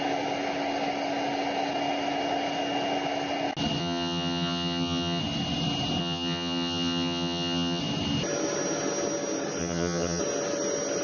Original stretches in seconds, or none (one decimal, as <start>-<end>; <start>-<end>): 0.0-3.8; 5.2-6.0; 7.8-9.6; 10.2-11.0